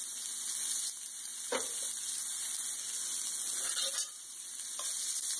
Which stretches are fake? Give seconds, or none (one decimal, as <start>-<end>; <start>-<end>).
none